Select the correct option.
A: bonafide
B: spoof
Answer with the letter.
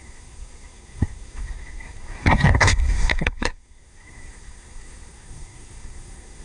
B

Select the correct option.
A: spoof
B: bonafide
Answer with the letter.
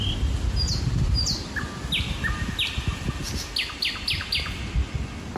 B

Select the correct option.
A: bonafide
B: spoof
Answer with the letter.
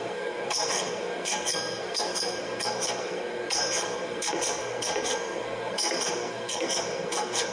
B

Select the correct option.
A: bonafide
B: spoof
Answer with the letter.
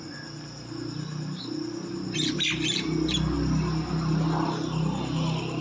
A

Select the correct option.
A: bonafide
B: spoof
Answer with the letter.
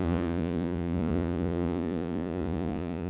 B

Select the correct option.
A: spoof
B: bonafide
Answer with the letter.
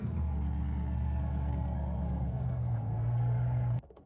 A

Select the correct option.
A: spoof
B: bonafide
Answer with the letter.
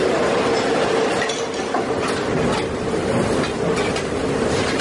B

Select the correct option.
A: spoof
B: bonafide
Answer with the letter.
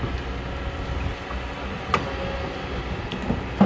B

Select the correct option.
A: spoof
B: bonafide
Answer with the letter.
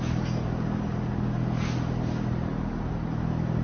B